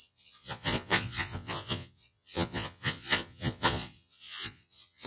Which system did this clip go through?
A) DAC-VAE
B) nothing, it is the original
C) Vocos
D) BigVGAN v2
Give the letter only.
C